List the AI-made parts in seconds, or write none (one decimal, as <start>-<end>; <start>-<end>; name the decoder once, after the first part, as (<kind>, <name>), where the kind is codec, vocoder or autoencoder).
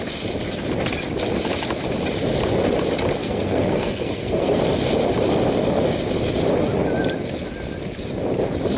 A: 3.2-4.6 (codec, SNAC)